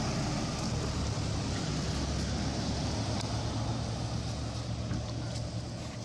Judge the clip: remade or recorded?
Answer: recorded